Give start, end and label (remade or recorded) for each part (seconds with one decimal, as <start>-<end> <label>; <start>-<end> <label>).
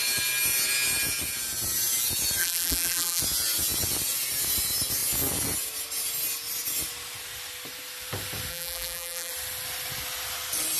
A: 0.0-2.4 recorded; 2.4-3.2 remade; 3.2-8.5 recorded; 8.5-9.3 remade; 9.3-10.8 recorded